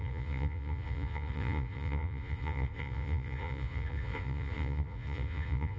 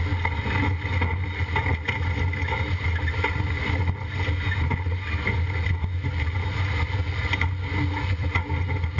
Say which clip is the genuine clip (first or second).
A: second